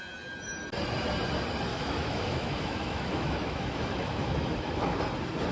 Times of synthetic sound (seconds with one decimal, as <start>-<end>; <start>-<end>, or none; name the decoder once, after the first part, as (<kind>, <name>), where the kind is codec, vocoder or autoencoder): 1.7-5.0 (autoencoder, DAC-VAE)